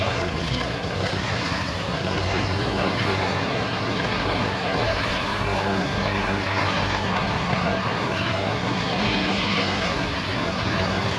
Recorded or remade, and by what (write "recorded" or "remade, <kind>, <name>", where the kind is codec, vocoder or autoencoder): remade, codec, SNAC